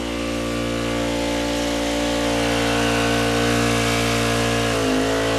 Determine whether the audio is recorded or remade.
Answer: recorded